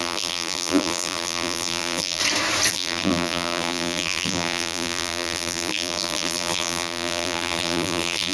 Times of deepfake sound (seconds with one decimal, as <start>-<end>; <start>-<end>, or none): 0.0-2.2; 2.7-8.3